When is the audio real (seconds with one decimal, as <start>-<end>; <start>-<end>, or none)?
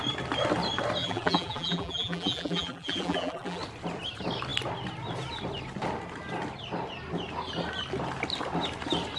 0.0-1.0; 3.6-9.2